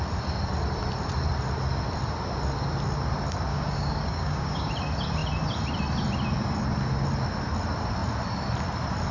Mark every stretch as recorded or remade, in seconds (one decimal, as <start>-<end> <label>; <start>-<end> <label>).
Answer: 0.0-3.5 recorded; 3.5-4.7 remade; 4.7-9.1 recorded